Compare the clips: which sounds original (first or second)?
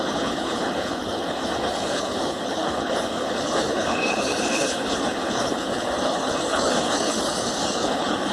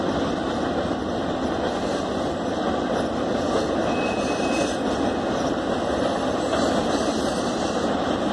second